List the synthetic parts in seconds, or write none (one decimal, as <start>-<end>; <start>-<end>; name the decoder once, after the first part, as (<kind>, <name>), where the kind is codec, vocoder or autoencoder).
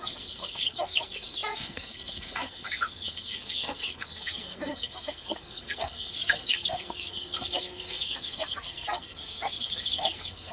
0.0-10.5 (codec, SNAC)